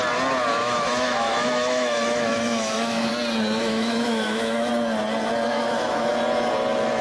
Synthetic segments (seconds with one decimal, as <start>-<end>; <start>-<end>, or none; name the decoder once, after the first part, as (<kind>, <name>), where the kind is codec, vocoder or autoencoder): 0.5-3.1 (autoencoder, DAC-VAE); 3.6-4.7; 5.5-6.1